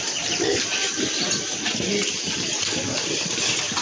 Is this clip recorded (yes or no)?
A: yes